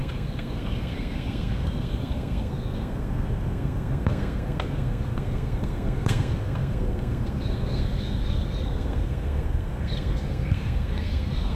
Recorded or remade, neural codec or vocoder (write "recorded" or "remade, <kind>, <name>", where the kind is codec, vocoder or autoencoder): remade, codec, SNAC